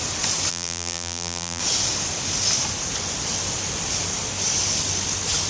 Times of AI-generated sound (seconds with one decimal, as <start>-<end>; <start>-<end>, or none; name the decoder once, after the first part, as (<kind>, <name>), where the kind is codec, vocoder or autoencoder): 0.5-1.6 (vocoder, BigVGAN v2)